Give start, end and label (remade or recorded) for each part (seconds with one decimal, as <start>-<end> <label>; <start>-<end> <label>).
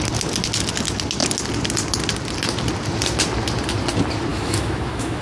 0.0-4.3 recorded; 4.3-5.2 remade